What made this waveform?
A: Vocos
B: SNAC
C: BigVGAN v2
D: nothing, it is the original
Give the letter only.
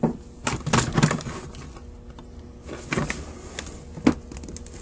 D